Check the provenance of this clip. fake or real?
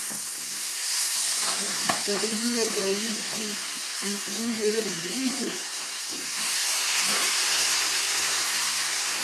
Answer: fake